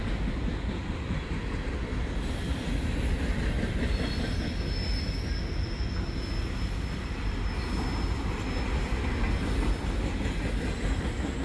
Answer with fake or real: real